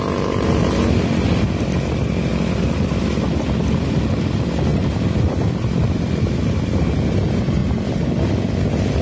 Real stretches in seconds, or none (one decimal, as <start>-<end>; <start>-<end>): 0.0-2.3; 3.0-4.7; 6.6-9.0